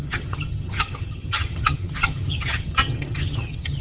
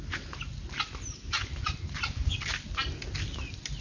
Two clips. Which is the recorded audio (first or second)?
second